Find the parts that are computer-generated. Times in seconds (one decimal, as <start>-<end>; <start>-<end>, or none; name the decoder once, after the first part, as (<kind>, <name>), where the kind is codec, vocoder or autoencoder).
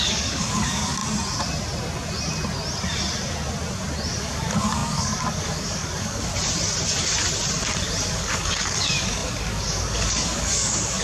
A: 0.0-1.0 (codec, DAC); 4.2-6.3; 8.1-11.0